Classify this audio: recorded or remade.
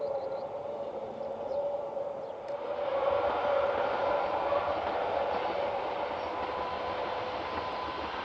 remade